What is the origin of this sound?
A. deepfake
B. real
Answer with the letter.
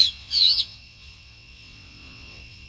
A